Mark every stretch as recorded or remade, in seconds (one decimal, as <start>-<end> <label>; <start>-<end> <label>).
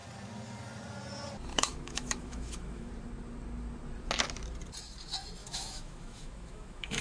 0.0-1.5 recorded; 1.5-2.9 remade; 2.9-5.4 recorded; 5.4-7.0 remade